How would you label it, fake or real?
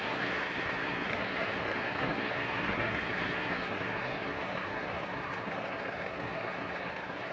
fake